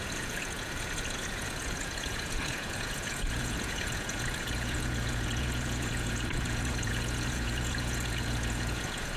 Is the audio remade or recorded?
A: remade